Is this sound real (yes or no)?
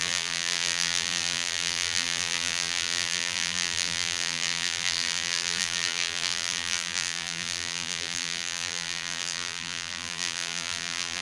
no